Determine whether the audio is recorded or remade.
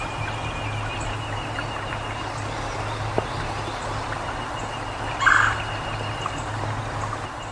recorded